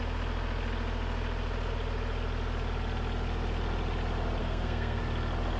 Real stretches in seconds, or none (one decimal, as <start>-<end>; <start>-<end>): 0.0-4.4; 5.0-5.6